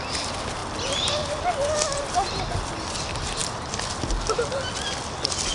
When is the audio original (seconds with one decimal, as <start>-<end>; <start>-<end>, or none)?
3.4-5.5

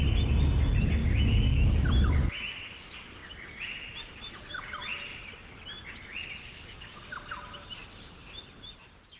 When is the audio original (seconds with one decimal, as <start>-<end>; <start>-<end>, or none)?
0.0-1.0; 1.7-6.4; 7.0-9.2

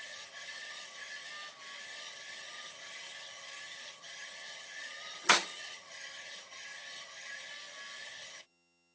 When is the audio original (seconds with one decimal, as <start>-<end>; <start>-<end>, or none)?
1.3-1.8; 7.5-8.0

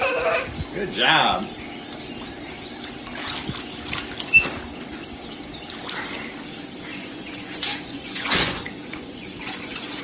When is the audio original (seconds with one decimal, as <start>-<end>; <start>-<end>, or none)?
0.0-6.9